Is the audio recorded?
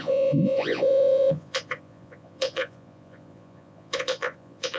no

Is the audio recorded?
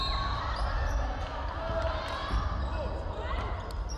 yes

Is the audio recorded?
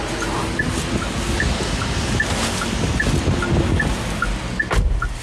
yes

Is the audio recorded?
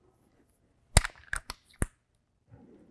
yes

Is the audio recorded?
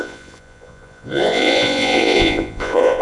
no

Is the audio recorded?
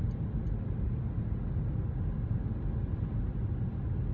yes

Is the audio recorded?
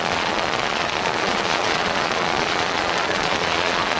no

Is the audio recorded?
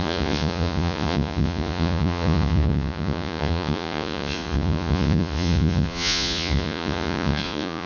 no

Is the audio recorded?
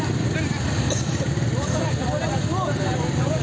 yes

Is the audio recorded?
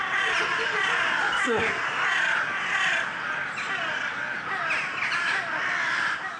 yes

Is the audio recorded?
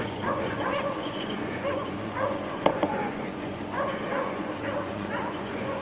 no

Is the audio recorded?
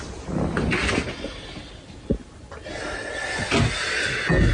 yes